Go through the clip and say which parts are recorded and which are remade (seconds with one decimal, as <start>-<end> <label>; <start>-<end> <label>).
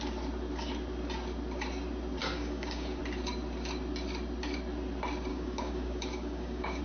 0.0-2.2 recorded; 2.2-3.0 remade; 3.0-5.3 recorded; 5.3-6.8 remade